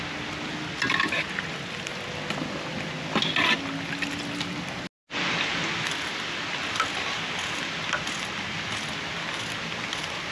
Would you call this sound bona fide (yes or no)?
yes